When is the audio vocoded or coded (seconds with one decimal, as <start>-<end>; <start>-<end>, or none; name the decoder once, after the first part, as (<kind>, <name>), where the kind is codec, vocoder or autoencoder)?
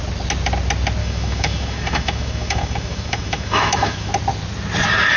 1.0-4.1 (autoencoder, DAC-VAE)